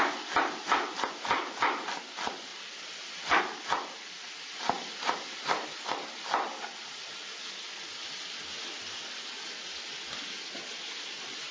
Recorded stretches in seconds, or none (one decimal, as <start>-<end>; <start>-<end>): 0.0-11.5